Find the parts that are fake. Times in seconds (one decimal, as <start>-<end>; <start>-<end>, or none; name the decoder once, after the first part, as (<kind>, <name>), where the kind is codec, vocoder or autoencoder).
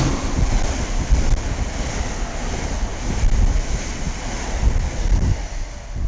none